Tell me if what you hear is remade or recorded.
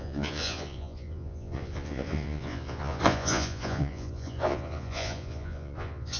remade